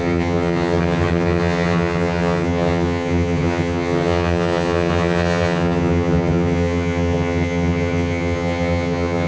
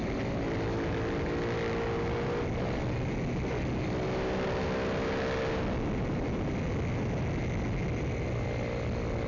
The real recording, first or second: second